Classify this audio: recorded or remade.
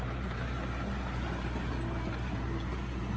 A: recorded